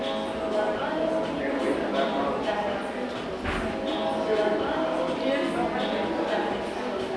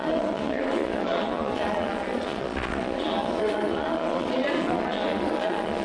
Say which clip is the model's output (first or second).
second